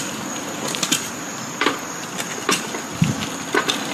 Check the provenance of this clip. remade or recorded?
remade